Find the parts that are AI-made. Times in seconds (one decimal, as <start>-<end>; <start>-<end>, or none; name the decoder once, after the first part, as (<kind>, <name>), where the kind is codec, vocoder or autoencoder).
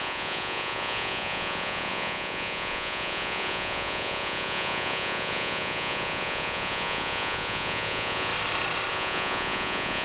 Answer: 0.0-8.3 (vocoder, Vocos); 8.9-10.0